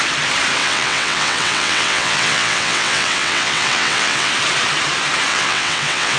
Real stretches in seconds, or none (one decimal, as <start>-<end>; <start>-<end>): 0.0-0.6; 4.3-5.3